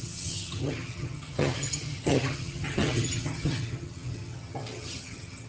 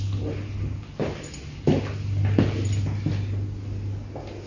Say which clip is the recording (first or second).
second